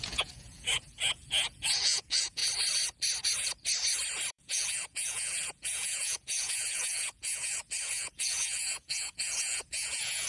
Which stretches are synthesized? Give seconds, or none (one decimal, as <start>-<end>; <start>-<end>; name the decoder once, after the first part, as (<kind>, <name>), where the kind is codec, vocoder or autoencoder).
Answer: 0.0-2.4 (vocoder, Vocos); 4.3-10.3